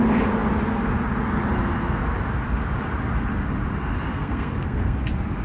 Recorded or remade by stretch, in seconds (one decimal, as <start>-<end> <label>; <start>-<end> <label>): 0.0-4.1 recorded; 4.1-5.0 remade; 5.0-5.4 recorded